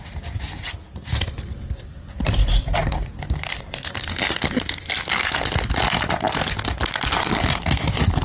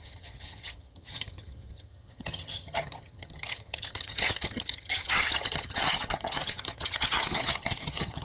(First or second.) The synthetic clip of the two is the second